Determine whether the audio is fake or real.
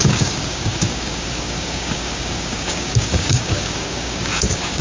fake